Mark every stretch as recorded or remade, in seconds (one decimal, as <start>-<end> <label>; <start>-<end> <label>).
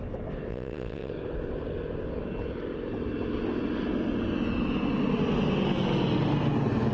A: 0.0-0.5 recorded; 0.5-1.1 remade; 1.1-6.9 recorded